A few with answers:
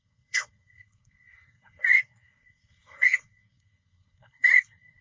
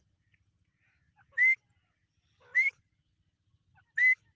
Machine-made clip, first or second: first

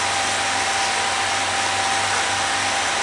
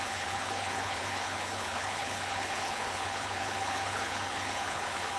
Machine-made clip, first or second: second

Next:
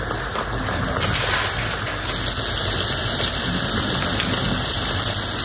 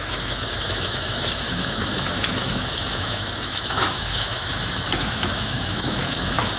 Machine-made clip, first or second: second